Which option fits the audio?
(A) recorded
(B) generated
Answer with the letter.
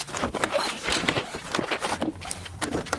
B